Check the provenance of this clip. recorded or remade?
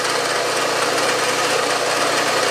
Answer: recorded